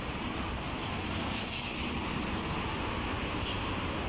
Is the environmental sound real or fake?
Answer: real